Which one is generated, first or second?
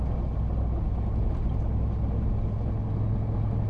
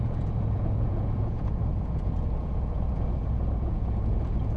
second